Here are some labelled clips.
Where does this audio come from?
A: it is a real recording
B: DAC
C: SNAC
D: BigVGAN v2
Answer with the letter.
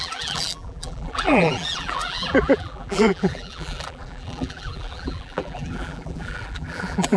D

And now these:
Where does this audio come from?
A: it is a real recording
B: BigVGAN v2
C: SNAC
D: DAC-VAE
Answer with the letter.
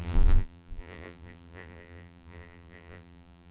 B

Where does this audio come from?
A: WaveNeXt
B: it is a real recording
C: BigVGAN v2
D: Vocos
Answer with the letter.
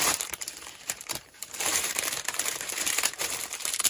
C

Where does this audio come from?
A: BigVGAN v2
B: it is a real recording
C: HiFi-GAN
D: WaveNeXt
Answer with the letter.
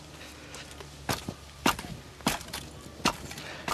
B